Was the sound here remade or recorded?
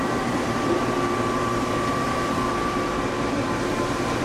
remade